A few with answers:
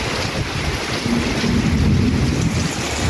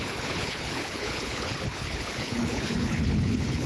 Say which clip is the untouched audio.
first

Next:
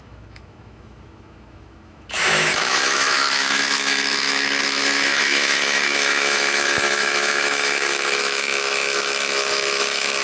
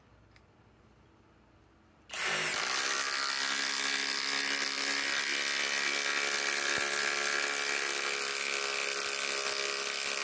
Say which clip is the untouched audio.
second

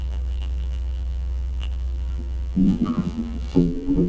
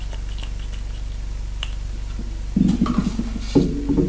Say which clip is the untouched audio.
second